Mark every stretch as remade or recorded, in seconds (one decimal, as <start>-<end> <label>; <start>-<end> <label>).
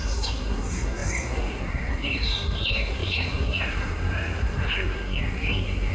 0.0-5.9 remade